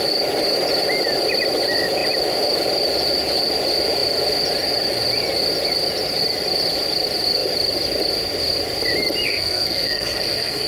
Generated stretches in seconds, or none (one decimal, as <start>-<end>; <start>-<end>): 9.3-10.7